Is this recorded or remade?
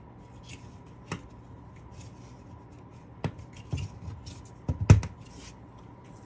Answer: recorded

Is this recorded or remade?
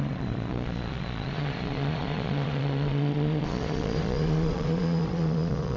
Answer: remade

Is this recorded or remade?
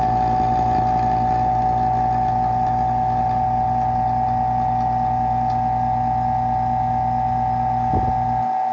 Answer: recorded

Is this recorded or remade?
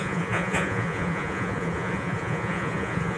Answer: remade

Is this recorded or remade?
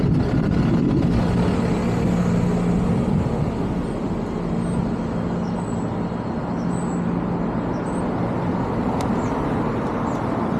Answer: recorded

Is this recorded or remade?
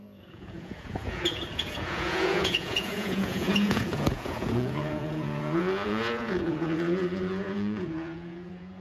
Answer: remade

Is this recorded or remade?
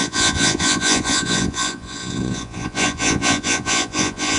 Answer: remade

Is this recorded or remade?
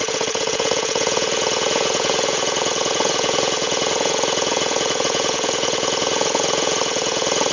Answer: remade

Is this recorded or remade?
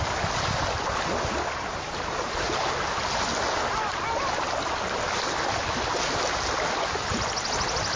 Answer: recorded